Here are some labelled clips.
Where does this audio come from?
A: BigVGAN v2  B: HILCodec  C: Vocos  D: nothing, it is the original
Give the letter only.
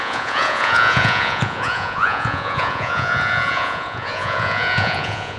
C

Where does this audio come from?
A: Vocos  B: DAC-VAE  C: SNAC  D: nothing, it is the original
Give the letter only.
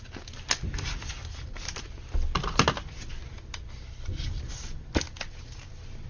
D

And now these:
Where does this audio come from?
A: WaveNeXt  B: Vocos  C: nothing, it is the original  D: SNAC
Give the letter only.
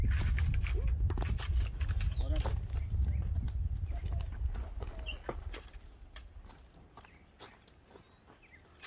C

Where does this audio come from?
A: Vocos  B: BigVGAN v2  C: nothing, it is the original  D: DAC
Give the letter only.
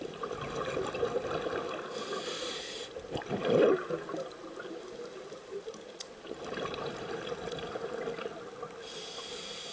C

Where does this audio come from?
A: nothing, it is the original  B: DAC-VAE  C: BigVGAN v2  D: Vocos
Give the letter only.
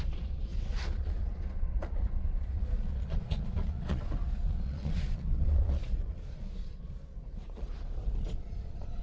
D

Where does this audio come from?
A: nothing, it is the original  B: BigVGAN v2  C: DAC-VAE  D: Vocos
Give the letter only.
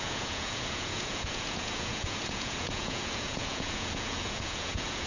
D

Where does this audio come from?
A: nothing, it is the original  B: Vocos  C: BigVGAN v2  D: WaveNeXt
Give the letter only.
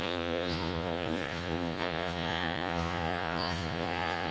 B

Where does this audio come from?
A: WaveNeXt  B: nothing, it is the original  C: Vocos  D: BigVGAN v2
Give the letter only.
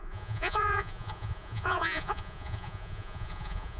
C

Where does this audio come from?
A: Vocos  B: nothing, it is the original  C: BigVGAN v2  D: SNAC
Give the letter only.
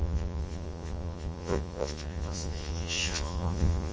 A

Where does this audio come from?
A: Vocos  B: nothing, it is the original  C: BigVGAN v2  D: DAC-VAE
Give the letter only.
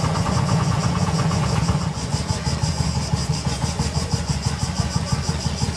A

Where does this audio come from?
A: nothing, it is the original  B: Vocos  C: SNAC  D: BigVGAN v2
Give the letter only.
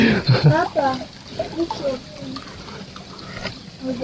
A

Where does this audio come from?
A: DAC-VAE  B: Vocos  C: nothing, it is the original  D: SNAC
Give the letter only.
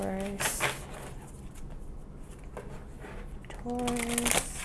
C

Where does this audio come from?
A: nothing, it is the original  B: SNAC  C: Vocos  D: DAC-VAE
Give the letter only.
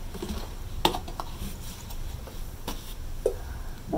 A